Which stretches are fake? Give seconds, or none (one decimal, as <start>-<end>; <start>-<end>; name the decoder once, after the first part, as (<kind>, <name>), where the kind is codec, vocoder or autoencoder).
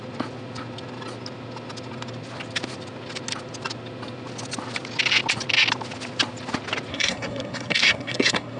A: 6.9-8.6 (codec, SNAC)